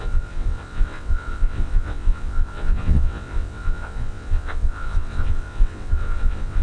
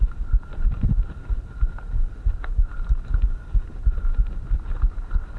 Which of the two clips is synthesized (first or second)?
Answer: first